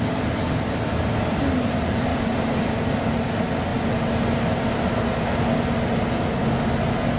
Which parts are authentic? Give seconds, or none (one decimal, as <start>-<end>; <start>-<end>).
0.0-7.2